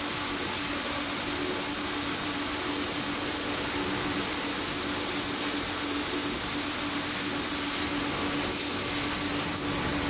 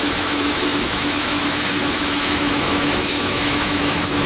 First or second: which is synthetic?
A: second